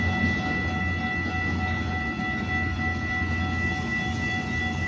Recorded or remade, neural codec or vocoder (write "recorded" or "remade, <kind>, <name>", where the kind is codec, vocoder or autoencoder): recorded